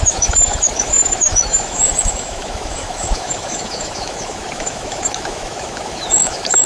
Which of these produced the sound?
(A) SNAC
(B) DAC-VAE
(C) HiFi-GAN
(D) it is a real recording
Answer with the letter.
B